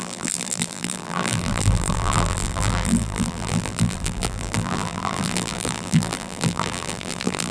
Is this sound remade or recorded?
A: remade